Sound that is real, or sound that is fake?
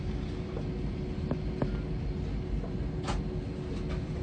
real